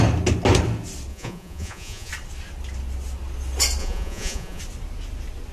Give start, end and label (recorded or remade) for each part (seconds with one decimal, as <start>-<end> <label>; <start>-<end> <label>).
0.0-1.1 recorded; 1.1-2.1 remade; 2.1-3.8 recorded; 3.8-4.6 remade; 4.6-5.5 recorded